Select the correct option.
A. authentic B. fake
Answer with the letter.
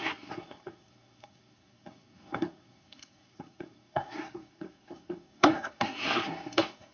B